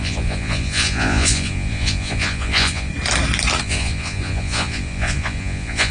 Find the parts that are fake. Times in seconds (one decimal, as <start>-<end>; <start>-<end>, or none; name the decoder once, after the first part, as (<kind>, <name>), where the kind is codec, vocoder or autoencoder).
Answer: 0.0-2.9 (vocoder, Vocos); 3.6-5.9